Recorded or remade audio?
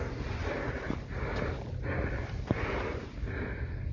recorded